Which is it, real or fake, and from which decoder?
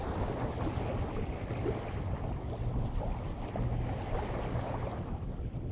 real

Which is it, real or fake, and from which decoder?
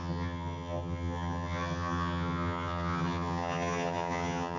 fake, vocoder, HiFi-GAN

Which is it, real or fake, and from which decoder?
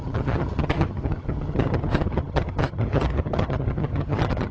fake, vocoder, HiFi-GAN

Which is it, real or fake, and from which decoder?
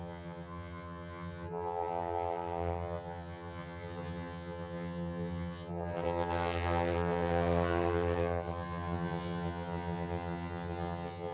fake, vocoder, HiFi-GAN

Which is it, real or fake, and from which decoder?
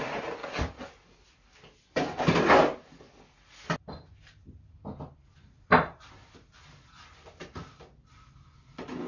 real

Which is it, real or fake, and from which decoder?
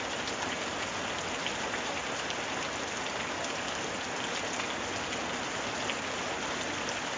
real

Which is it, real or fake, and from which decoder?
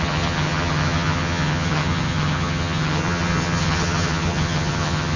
fake, vocoder, HiFi-GAN